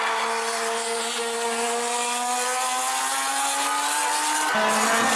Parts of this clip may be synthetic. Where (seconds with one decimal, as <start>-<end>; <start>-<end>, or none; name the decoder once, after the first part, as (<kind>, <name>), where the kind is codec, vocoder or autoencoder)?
none